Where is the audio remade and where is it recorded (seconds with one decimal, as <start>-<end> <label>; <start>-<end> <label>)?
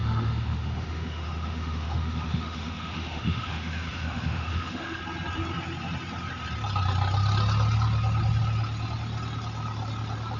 0.0-5.0 remade; 5.0-10.4 recorded